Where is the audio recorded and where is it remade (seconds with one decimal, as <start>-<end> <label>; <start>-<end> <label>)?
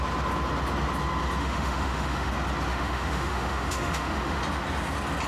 0.0-1.4 recorded; 1.4-2.3 remade; 2.3-2.7 recorded; 2.7-4.4 remade; 4.4-5.3 recorded